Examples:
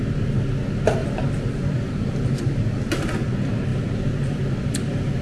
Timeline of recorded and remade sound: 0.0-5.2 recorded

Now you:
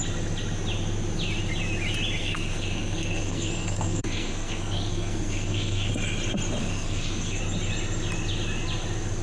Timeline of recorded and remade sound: 0.0-2.2 recorded; 2.2-5.9 remade; 5.9-6.6 recorded; 6.6-7.4 remade; 7.4-9.2 recorded

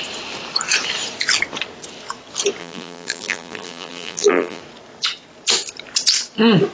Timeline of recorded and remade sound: 0.0-2.6 recorded; 2.6-4.6 remade; 4.6-6.7 recorded

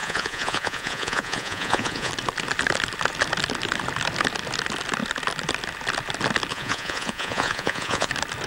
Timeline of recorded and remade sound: 0.0-2.1 remade; 2.1-6.5 recorded; 6.5-8.1 remade; 8.1-8.5 recorded

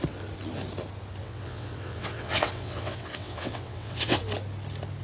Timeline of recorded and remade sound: 0.0-1.2 recorded; 1.2-4.2 remade; 4.2-5.0 recorded

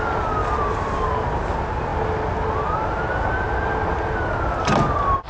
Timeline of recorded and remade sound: 0.0-0.4 recorded; 0.4-1.1 remade; 1.1-5.3 recorded